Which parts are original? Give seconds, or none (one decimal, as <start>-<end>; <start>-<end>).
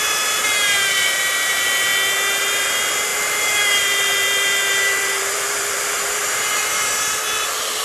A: 1.9-2.4